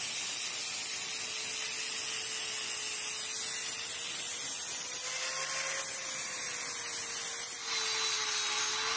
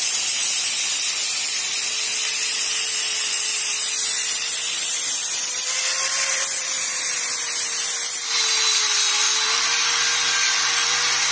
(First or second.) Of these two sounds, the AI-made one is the second